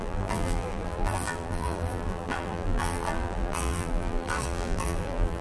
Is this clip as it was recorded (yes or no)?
no